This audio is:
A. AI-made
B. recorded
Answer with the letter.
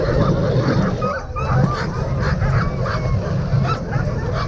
B